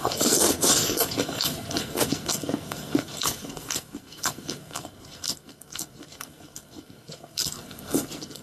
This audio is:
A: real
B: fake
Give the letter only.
B